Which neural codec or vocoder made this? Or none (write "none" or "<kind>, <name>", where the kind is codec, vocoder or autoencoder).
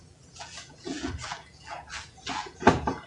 vocoder, BigVGAN v2